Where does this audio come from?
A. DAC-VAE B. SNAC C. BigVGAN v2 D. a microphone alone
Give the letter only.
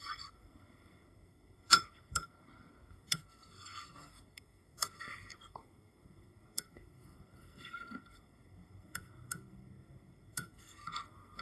B